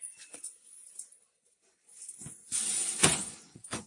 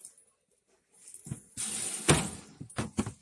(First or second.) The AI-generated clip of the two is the first